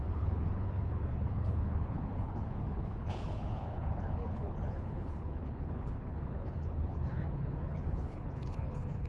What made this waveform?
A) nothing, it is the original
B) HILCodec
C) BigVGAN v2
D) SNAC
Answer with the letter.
B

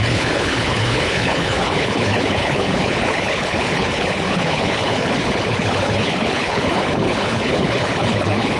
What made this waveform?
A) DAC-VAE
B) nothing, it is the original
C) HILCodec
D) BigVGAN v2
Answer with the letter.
C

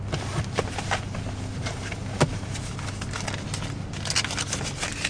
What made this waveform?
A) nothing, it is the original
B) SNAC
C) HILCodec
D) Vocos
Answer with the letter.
A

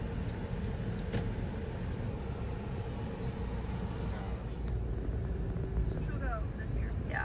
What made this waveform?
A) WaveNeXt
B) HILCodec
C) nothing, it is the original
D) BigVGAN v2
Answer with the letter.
C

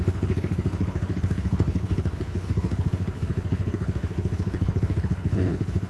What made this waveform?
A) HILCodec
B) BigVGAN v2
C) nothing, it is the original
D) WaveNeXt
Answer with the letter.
A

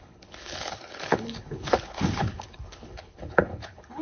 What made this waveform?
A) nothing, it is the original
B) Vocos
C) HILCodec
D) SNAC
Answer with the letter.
C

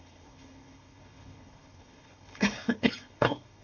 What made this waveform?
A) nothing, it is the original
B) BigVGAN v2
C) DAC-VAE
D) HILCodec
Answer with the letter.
D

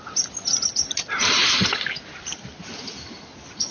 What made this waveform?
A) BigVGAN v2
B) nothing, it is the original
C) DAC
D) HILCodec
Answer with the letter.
B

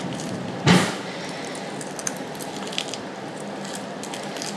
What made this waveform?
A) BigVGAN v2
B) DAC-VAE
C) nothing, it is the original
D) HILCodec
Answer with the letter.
C